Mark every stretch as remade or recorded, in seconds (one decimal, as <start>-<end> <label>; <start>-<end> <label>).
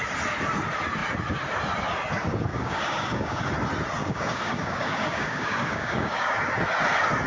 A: 0.0-2.5 recorded; 2.5-3.4 remade; 3.4-4.0 recorded; 4.0-6.4 remade; 6.4-7.3 recorded